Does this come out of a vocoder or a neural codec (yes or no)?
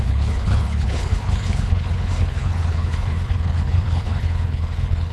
yes